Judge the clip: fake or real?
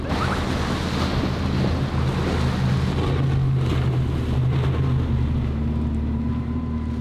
real